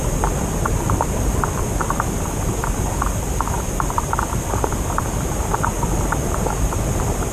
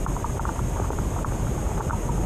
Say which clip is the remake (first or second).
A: first